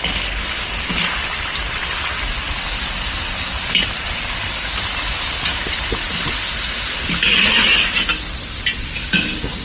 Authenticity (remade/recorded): recorded